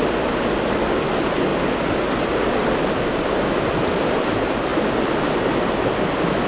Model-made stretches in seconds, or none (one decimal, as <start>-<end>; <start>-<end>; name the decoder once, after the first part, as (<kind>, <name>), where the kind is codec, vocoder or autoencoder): none